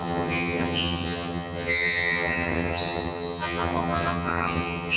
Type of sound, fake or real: fake